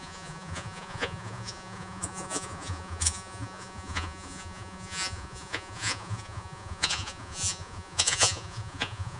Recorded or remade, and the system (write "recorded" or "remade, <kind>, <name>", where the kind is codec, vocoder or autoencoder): remade, vocoder, Vocos